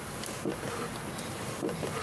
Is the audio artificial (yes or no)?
no